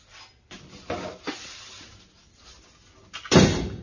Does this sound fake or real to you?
real